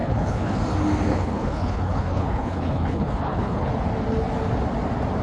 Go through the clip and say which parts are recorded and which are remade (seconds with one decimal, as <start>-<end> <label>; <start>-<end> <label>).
0.0-0.6 remade; 0.6-1.1 recorded; 1.1-3.7 remade; 3.7-5.2 recorded